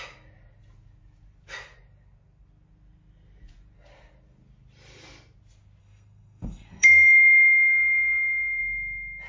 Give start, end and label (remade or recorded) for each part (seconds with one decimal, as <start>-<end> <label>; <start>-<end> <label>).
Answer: 0.0-5.8 recorded; 5.8-8.6 remade; 8.6-9.3 recorded